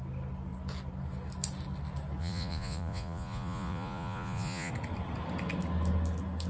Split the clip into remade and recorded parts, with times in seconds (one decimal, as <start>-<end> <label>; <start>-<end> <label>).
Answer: 0.0-2.2 recorded; 2.2-4.7 remade; 4.7-6.5 recorded